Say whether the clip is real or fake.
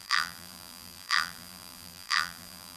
fake